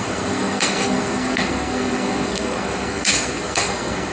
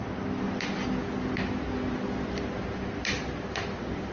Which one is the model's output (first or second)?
first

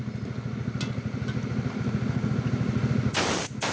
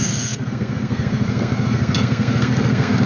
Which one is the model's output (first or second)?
second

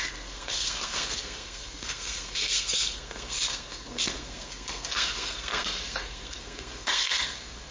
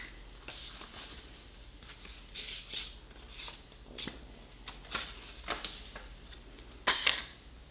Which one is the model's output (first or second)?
first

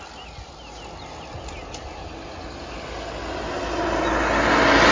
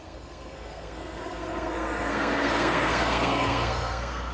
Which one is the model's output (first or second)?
second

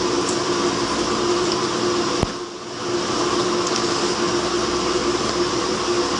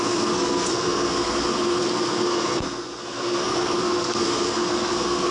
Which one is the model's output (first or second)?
second